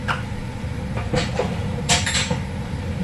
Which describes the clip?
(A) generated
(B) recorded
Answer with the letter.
A